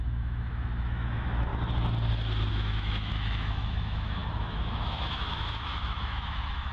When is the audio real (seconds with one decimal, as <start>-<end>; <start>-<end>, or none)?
1.5-2.5